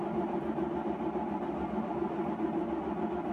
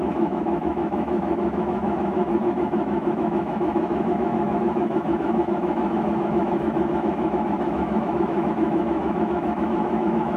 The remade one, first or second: second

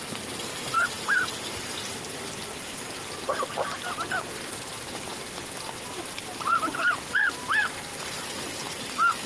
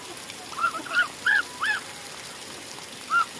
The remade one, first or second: first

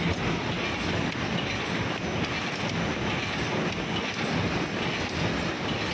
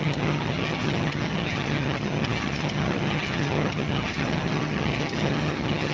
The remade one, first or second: second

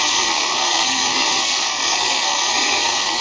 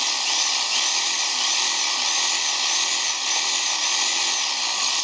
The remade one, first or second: first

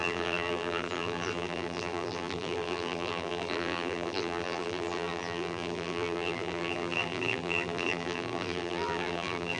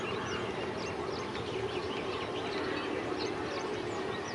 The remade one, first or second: first